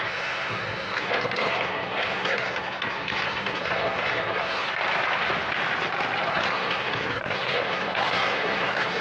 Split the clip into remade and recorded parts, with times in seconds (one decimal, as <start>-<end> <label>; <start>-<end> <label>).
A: 0.0-4.7 remade; 4.7-6.3 recorded; 6.3-9.0 remade